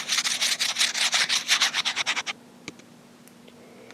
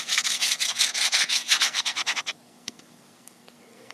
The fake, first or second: second